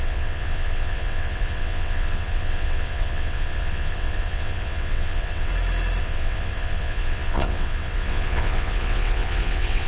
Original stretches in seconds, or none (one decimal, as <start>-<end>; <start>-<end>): 5.5-6.0